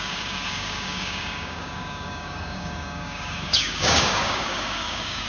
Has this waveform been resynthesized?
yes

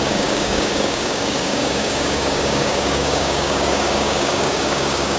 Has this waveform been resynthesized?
yes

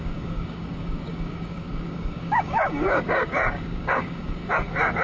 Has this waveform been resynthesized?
yes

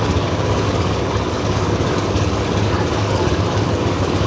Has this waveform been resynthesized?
yes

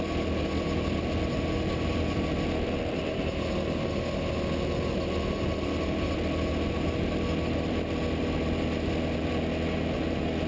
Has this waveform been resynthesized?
no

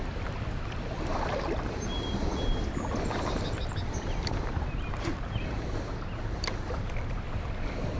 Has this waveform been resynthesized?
no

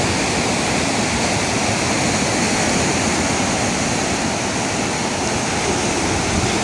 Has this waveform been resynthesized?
no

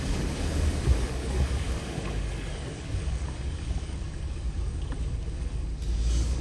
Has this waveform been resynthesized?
yes